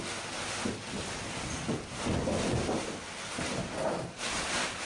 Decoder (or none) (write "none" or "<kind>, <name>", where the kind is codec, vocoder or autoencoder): none